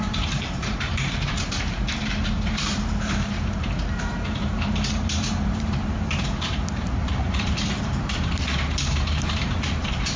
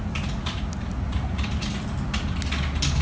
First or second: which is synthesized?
first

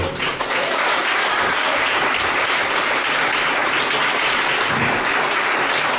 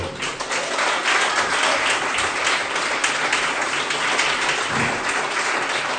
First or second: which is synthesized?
first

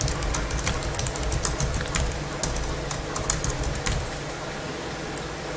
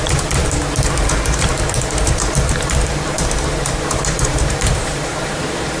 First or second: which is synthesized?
second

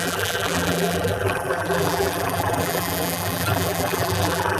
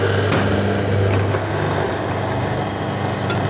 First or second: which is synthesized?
first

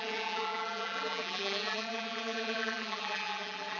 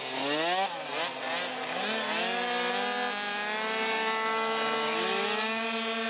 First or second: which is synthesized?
first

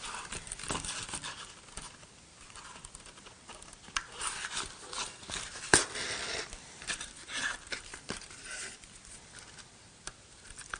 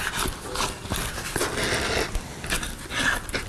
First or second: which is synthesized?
first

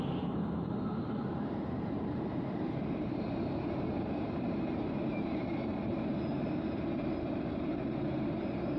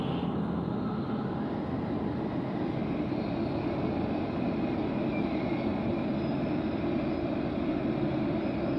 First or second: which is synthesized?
first